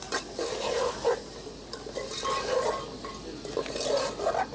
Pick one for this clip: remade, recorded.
recorded